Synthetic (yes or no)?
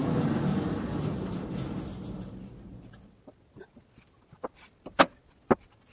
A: no